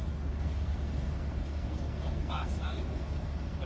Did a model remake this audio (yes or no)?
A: yes